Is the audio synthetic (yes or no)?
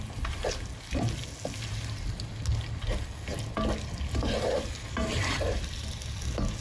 no